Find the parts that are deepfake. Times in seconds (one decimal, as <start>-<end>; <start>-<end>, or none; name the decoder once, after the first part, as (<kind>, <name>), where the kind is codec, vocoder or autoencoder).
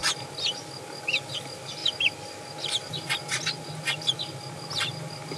none